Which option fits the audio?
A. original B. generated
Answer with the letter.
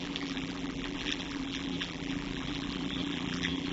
B